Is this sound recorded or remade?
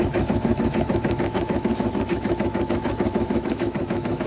remade